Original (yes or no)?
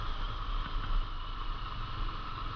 yes